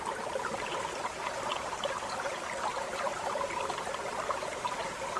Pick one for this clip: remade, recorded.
recorded